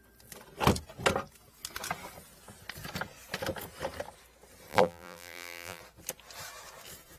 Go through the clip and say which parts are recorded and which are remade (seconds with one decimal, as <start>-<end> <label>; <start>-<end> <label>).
0.0-4.7 recorded; 4.7-5.8 remade; 5.8-7.2 recorded